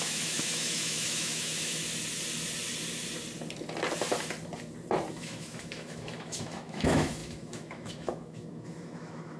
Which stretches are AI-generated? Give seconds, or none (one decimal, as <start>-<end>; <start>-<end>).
0.0-1.8; 5.1-9.4

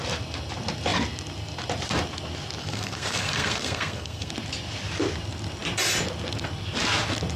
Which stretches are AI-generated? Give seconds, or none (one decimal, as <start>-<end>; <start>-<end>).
2.6-4.3

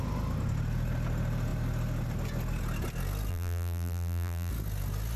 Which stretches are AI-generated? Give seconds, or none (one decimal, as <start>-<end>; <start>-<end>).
3.3-4.5

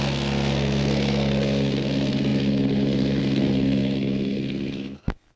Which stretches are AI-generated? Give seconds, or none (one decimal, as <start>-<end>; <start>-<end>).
0.0-5.4

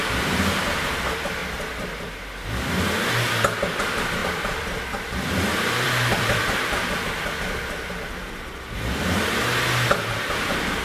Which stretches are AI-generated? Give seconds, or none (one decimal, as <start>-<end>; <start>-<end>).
1.4-1.9; 4.2-7.1